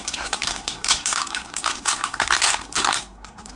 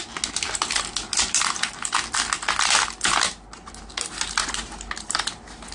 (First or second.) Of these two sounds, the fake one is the first